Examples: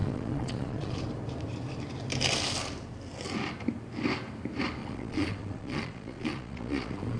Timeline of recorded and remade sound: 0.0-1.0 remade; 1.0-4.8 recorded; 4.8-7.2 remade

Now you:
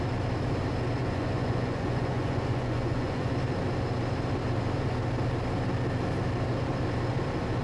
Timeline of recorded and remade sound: 0.0-1.0 recorded; 1.0-3.3 remade; 3.3-7.6 recorded